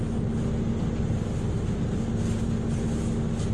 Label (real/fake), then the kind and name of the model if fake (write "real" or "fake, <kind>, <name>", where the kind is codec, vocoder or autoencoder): real